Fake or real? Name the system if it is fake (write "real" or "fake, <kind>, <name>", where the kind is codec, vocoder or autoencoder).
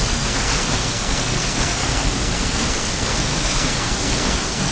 fake, codec, SNAC